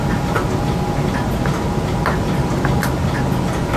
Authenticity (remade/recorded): recorded